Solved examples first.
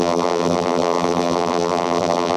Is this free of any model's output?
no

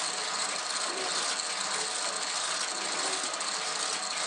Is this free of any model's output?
yes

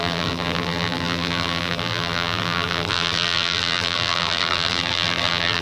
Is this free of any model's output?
no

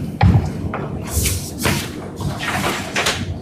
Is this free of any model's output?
no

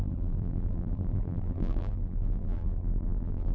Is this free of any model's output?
no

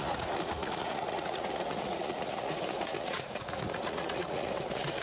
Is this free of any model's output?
no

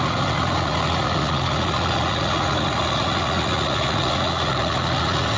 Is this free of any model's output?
no